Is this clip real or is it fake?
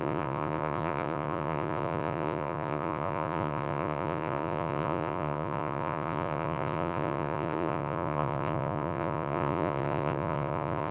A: fake